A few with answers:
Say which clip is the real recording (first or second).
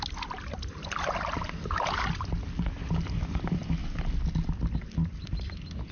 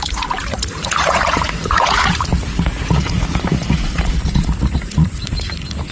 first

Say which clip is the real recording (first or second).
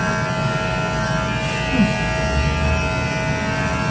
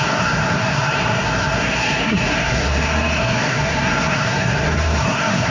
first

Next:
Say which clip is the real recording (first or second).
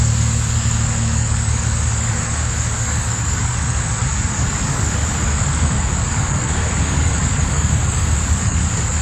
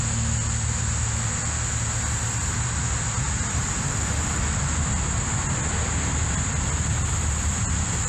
second